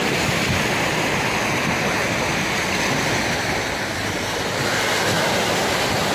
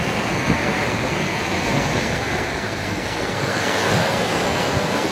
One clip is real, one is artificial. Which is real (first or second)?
first